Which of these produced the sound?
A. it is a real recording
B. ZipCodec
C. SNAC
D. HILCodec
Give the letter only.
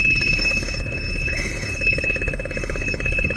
D